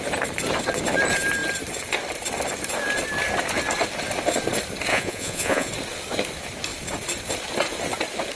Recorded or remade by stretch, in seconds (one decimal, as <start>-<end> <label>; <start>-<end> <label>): 0.0-4.9 recorded; 4.9-5.7 remade; 5.7-8.4 recorded